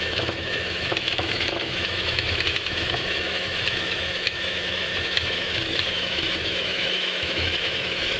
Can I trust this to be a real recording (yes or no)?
no